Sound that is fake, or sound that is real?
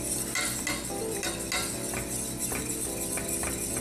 real